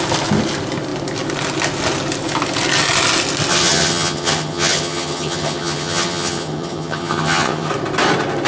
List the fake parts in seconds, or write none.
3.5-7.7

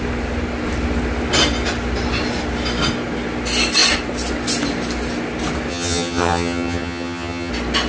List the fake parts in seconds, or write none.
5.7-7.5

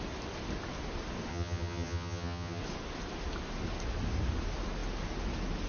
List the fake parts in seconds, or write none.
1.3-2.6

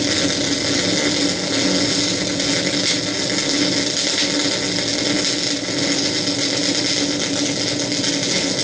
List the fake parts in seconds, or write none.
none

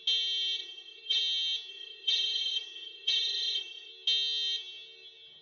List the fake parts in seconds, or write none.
0.6-1.2; 1.7-3.9